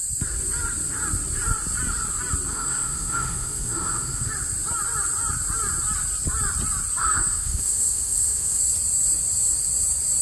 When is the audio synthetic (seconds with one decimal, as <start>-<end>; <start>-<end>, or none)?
2.5-4.3; 7.0-8.6